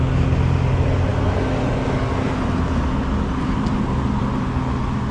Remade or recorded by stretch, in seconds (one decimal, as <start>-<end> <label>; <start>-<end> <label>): 0.0-5.1 recorded